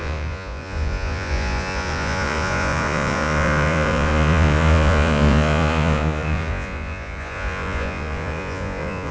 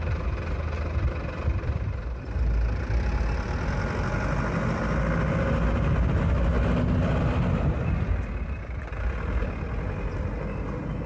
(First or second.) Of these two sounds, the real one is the second